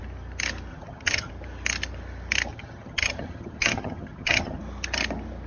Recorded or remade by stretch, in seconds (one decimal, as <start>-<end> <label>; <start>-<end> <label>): 0.0-0.7 recorded; 0.7-1.3 remade; 1.3-2.5 recorded; 2.5-4.6 remade; 4.6-5.5 recorded